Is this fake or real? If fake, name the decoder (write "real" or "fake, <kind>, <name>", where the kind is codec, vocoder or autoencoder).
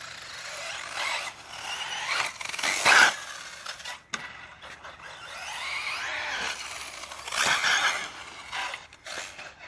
real